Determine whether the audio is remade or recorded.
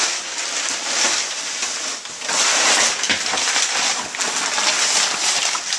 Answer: recorded